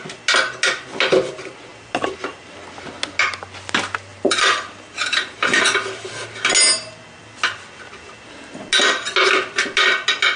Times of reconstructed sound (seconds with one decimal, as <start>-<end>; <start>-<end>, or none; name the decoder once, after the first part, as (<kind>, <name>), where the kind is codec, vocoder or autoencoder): 4.1-6.1 (vocoder, BigVGAN v2)